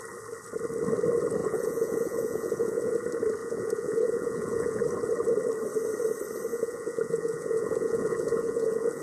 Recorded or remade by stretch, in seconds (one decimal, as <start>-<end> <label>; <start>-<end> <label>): 0.0-1.4 recorded; 1.4-2.9 remade; 2.9-3.4 recorded; 3.4-4.8 remade; 4.8-6.5 recorded; 6.5-9.0 remade